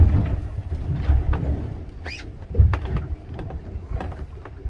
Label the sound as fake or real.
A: real